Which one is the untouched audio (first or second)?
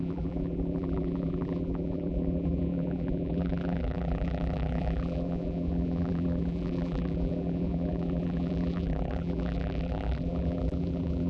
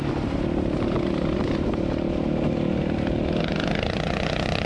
second